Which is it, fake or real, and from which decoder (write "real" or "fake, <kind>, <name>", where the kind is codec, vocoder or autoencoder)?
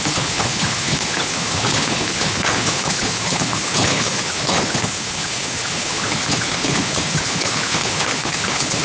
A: fake, codec, HILCodec